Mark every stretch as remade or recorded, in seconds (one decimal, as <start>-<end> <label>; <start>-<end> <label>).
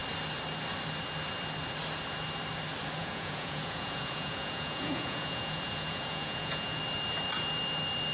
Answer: 0.0-3.0 recorded; 3.0-6.8 remade; 6.8-8.1 recorded